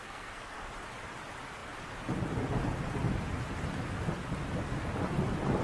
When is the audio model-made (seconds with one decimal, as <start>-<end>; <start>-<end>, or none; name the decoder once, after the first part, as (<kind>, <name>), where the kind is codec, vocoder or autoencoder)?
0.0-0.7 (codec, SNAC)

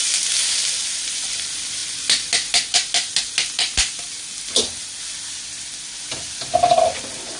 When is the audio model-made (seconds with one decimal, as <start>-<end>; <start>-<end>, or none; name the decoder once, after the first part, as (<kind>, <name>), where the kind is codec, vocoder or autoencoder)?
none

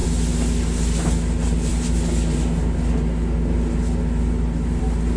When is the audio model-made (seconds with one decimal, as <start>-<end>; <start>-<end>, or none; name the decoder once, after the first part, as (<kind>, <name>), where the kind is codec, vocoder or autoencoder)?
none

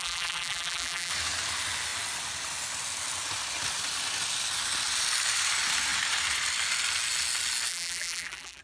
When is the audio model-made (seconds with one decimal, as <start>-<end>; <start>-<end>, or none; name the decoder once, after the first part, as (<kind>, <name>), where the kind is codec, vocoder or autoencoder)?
0.0-1.1 (vocoder, BigVGAN v2); 7.7-8.6